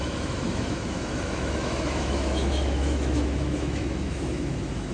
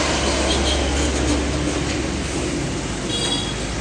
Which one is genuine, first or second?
second